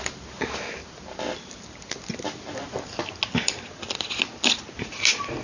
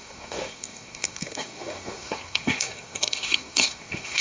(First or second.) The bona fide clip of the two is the first